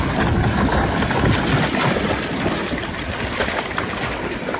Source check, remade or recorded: recorded